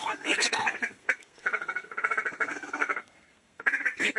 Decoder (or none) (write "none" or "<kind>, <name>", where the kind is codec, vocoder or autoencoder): codec, SNAC